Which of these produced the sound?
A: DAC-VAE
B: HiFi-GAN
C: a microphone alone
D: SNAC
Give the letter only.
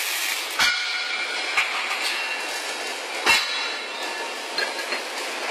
C